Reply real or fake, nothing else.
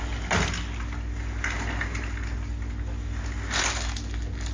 real